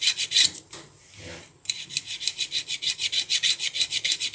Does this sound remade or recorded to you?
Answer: recorded